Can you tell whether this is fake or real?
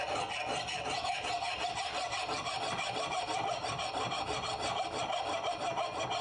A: real